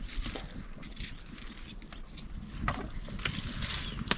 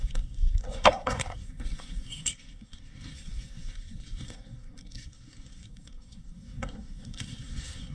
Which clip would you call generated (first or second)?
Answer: second